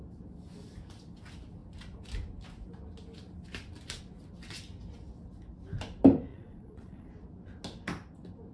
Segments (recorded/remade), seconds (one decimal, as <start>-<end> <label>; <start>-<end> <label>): 0.0-6.3 recorded; 6.3-7.1 remade; 7.1-8.5 recorded